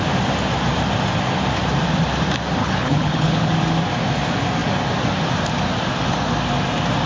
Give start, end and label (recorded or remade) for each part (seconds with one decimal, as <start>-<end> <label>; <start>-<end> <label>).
0.0-2.6 recorded; 2.6-3.5 remade; 3.5-7.1 recorded